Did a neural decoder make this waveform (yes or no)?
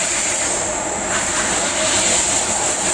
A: yes